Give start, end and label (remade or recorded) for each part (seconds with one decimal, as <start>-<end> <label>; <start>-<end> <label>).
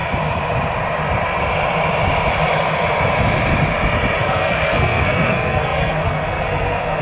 0.0-4.2 recorded; 4.2-7.0 remade